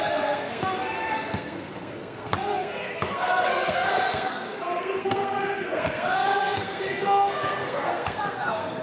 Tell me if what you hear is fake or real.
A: fake